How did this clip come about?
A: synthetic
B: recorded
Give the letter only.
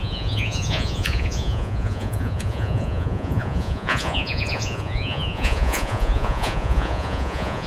A